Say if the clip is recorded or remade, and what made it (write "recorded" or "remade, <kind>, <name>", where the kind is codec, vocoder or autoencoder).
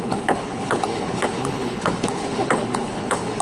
remade, codec, HILCodec